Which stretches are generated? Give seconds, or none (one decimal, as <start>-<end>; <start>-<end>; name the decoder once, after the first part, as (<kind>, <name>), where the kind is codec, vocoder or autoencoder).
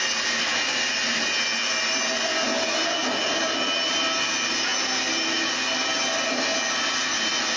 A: none